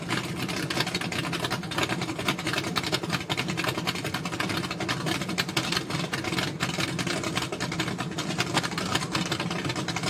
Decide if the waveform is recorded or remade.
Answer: recorded